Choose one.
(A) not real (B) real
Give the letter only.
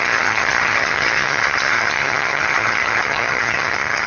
A